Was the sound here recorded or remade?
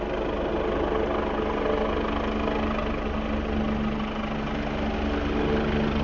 recorded